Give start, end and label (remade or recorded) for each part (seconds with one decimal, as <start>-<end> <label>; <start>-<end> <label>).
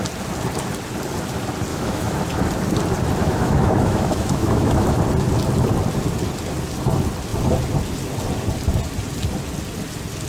0.0-1.7 recorded; 1.7-2.2 remade; 2.2-3.2 recorded; 3.2-5.0 remade; 5.0-10.3 recorded